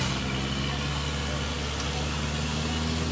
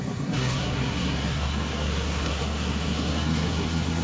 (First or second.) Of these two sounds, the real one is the first